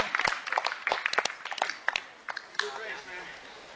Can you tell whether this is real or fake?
real